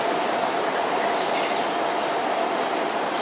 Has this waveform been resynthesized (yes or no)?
no